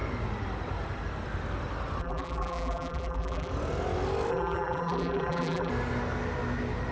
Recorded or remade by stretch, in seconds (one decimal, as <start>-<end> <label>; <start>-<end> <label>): 0.0-2.0 recorded; 2.0-3.5 remade; 3.5-4.3 recorded; 4.3-5.7 remade; 5.7-6.9 recorded